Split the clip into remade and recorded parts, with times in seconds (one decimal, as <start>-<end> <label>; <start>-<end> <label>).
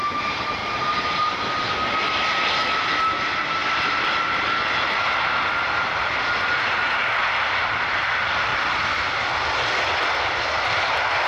0.0-3.6 recorded; 3.6-4.2 remade; 4.2-8.5 recorded; 8.5-11.3 remade